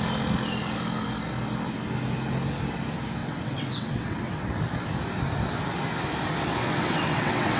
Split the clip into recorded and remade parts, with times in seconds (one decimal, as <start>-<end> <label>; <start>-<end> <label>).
0.0-3.2 recorded; 3.2-4.6 remade; 4.6-6.6 recorded; 6.6-7.6 remade